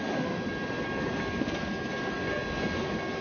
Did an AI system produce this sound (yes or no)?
no